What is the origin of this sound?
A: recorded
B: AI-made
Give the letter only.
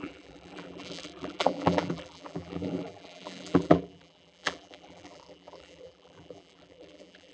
B